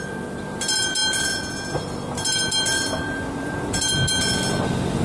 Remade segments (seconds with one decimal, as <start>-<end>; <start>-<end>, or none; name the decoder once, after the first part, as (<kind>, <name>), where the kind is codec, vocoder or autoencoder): none